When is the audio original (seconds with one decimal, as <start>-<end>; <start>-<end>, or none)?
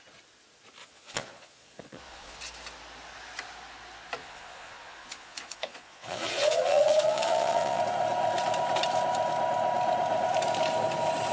0.0-0.8; 2.4-4.2; 7.8-11.3